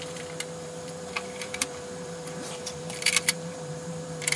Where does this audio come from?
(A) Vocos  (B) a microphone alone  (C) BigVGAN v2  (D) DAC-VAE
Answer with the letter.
C